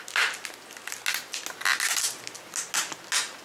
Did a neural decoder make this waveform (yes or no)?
no